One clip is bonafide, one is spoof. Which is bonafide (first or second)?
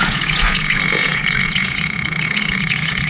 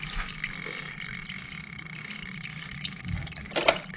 second